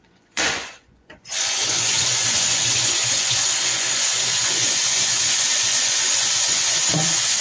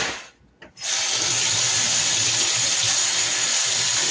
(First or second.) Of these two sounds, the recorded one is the second